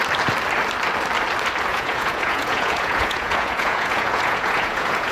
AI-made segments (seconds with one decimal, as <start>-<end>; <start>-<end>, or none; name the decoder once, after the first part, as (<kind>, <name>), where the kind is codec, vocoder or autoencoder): 1.7-5.1 (vocoder, Vocos)